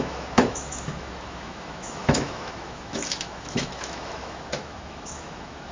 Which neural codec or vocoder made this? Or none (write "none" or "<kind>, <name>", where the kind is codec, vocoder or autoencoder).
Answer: autoencoder, DAC-VAE